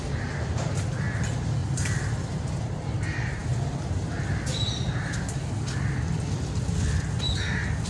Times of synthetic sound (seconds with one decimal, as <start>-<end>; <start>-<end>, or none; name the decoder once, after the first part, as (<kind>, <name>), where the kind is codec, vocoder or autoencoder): none